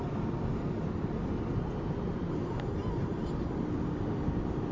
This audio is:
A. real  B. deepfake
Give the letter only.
A